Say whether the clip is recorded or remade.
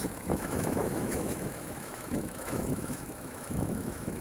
remade